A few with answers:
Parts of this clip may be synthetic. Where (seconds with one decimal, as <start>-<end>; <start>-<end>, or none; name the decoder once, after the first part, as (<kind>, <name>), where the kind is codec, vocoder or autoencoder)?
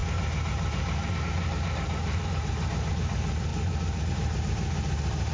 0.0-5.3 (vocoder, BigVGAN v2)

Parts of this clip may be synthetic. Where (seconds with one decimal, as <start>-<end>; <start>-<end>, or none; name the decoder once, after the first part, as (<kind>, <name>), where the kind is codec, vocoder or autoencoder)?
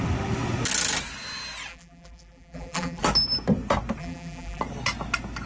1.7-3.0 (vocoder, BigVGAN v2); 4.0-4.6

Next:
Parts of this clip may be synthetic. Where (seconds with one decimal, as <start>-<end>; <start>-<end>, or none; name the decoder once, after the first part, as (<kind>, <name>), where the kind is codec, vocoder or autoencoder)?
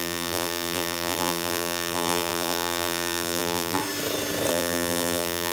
0.0-3.8 (vocoder, BigVGAN v2); 4.5-5.5